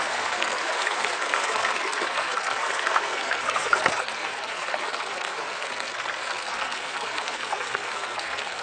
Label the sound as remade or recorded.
remade